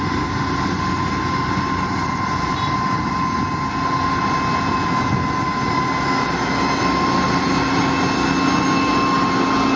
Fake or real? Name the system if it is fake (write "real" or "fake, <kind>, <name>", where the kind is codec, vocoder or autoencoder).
real